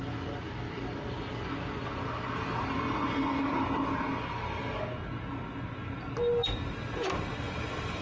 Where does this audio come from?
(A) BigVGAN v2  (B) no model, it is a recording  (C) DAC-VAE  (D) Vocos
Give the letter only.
B